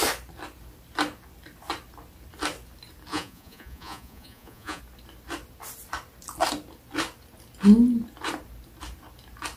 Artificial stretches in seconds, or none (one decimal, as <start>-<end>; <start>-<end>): 3.1-4.8